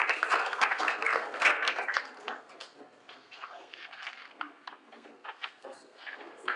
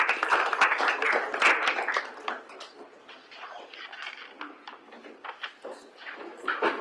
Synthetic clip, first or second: first